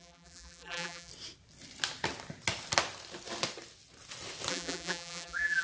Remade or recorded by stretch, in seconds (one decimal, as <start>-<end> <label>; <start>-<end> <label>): 0.0-1.1 remade; 1.1-4.5 recorded; 4.5-5.6 remade